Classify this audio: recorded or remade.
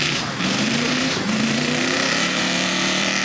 remade